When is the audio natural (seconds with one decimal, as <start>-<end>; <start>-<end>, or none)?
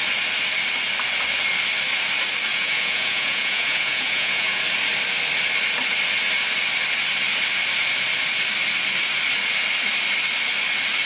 0.0-2.5; 4.6-11.1